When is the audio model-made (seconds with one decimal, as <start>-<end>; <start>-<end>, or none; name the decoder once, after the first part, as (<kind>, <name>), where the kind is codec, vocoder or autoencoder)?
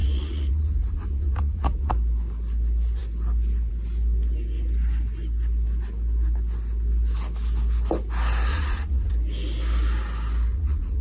0.0-1.9 (vocoder, Vocos); 8.5-9.1; 10.5-11.0